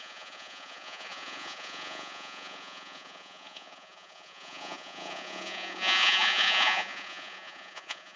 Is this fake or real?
fake